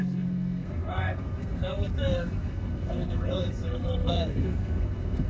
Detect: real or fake fake